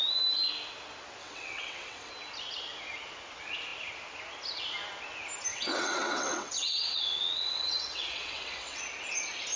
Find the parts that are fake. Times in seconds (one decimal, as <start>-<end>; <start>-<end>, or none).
1.2-2.1; 5.5-8.8